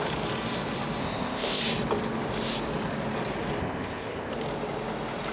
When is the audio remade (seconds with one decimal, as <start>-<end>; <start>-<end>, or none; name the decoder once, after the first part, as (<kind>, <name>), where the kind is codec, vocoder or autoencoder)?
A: 1.0-1.6 (codec, ZipCodec); 3.6-4.3